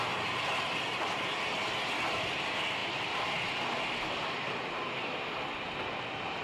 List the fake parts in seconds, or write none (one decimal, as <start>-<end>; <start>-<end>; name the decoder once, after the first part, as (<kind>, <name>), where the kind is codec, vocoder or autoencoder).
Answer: none